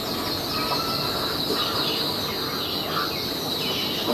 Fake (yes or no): no